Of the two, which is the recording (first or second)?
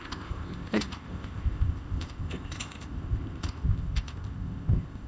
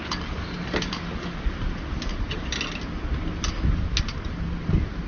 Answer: second